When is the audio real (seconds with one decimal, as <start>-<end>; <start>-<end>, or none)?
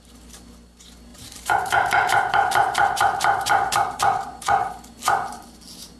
0.0-1.1; 4.7-6.0